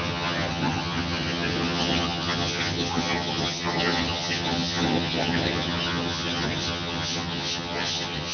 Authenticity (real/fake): fake